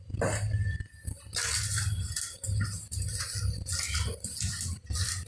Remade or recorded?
recorded